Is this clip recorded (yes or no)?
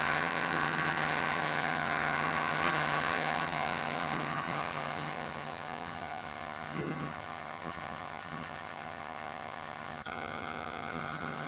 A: no